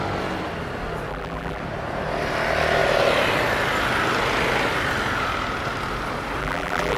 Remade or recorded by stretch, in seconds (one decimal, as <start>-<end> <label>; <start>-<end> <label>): 0.0-1.1 recorded; 1.1-1.6 remade; 1.6-6.4 recorded; 6.4-7.0 remade